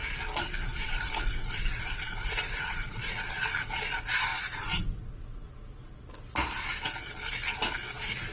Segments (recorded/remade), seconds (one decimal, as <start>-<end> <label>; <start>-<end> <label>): 0.0-0.7 recorded; 0.7-3.5 remade; 3.5-4.3 recorded; 4.3-5.1 remade; 5.1-8.3 recorded